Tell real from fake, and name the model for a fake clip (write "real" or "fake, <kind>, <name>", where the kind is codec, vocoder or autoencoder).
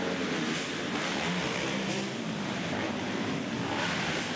real